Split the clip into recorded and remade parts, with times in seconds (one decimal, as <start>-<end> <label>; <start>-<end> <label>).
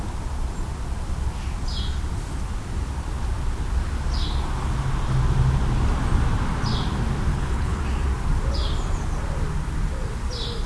0.0-7.3 recorded; 7.3-7.8 remade; 7.8-10.7 recorded